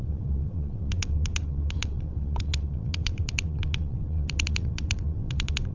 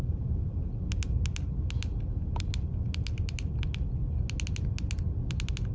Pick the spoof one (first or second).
first